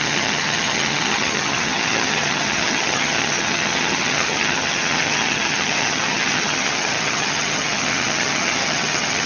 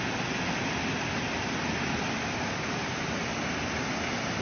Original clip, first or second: second